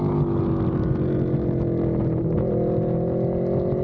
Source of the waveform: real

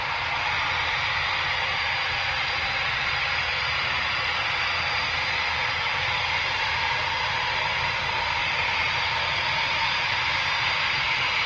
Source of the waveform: real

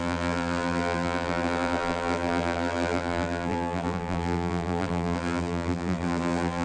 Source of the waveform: fake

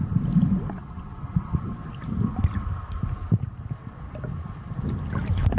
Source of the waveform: real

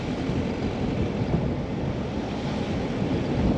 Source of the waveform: real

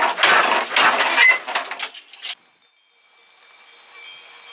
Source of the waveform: real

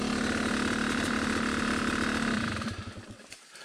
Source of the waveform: fake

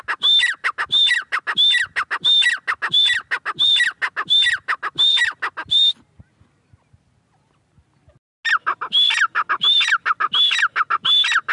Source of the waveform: real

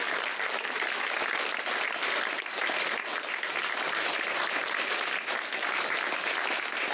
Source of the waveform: real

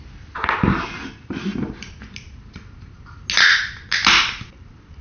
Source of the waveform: real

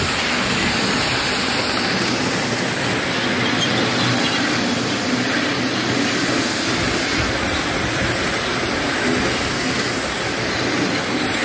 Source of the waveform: real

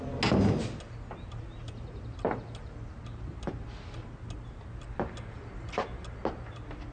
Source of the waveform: real